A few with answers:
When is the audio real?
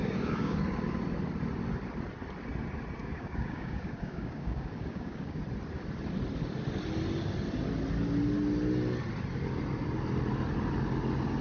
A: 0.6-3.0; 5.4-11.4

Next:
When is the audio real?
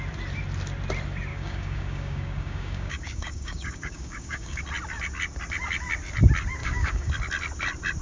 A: 0.0-1.3; 4.6-6.6; 7.1-8.0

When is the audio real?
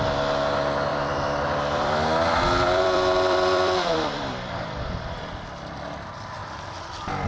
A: 0.0-0.9; 5.3-7.3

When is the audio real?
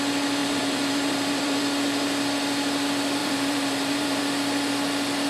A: 0.0-0.4; 1.6-3.2; 4.2-5.3